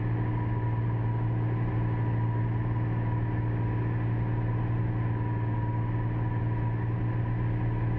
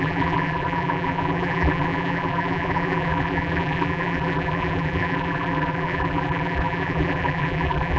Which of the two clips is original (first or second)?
first